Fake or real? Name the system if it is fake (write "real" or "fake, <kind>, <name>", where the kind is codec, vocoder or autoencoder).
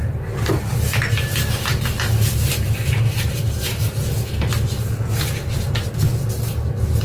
real